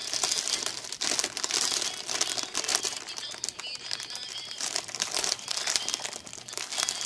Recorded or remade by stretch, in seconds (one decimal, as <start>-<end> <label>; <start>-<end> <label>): 0.0-2.7 recorded; 2.7-5.9 remade; 5.9-7.1 recorded